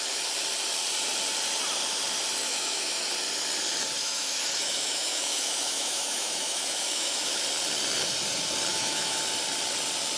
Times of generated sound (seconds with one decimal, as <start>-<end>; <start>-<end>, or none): 2.5-3.1; 4.0-7.4; 8.7-9.2